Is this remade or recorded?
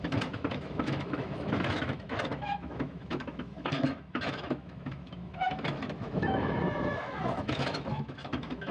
remade